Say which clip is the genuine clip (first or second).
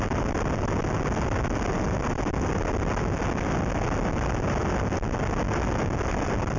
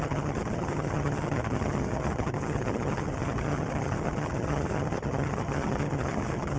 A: first